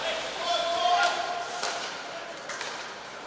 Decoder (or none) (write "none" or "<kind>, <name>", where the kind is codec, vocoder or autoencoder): vocoder, BigVGAN v2